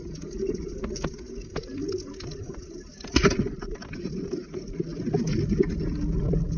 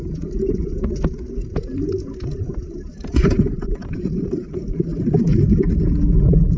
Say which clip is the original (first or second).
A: first